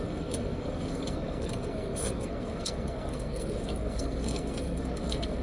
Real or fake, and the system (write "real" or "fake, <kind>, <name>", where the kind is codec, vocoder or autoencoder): fake, codec, SNAC